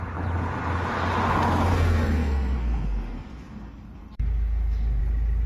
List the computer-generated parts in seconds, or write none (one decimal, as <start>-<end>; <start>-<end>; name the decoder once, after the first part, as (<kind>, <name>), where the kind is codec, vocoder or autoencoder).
1.7-5.0 (codec, SNAC)